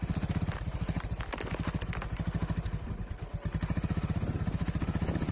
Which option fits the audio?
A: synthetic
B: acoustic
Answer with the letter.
B